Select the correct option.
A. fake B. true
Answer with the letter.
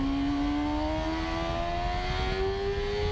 B